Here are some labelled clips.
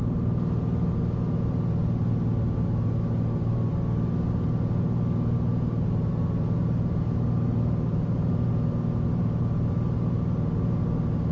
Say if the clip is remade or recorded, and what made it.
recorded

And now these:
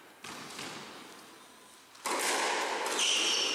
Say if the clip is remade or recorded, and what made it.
recorded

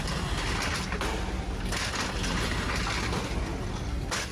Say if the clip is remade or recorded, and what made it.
recorded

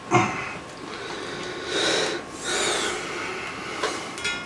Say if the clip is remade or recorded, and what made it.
recorded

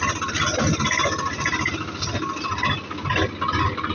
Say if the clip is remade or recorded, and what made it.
recorded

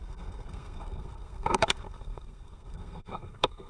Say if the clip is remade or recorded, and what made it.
remade, codec, SNAC